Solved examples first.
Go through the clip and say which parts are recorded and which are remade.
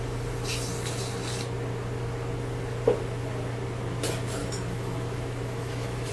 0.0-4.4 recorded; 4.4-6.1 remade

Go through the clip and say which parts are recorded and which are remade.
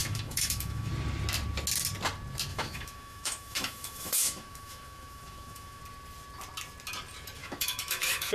0.0-0.9 remade; 0.9-2.5 recorded; 2.5-5.8 remade; 5.8-7.4 recorded; 7.4-8.3 remade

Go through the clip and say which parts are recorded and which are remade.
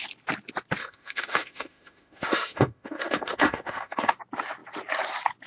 0.0-0.8 recorded; 0.8-4.1 remade; 4.1-5.5 recorded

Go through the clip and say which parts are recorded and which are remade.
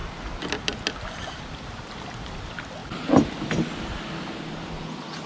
0.0-5.3 recorded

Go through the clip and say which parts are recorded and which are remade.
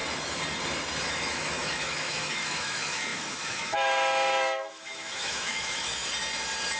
0.0-1.1 recorded; 1.1-6.0 remade; 6.0-6.8 recorded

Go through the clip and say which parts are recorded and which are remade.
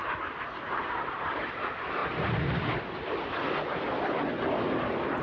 0.0-5.2 recorded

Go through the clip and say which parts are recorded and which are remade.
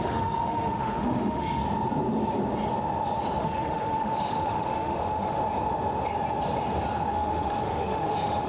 0.0-1.6 remade; 1.6-3.4 recorded; 3.4-5.4 remade; 5.4-7.1 recorded; 7.1-8.5 remade